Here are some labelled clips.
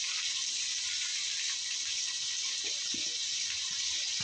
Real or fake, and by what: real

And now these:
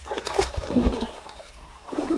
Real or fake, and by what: fake, codec, SNAC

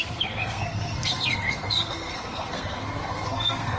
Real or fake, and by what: fake, codec, SNAC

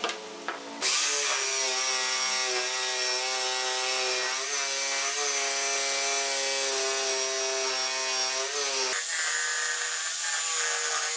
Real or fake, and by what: real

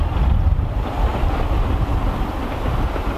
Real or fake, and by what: real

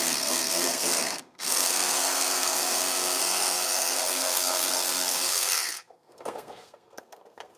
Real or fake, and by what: fake, codec, SNAC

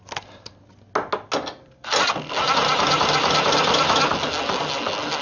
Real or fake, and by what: real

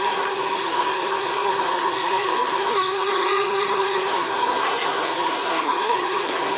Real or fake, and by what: fake, codec, SNAC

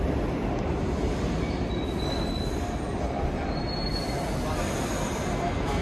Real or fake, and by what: real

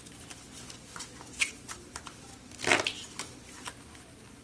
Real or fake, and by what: real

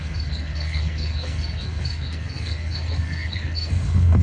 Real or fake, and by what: fake, codec, SNAC